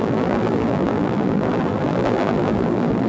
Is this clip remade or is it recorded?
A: remade